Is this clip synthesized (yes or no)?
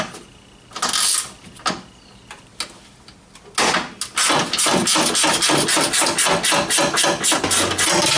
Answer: no